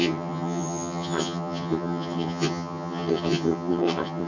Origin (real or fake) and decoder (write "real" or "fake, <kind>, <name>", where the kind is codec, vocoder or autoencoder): fake, vocoder, HiFi-GAN